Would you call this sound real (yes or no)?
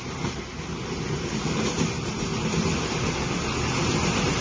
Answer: yes